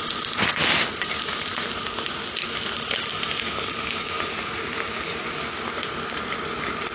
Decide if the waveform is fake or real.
real